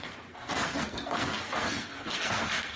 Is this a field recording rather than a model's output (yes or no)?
no